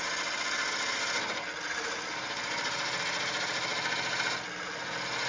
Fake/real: real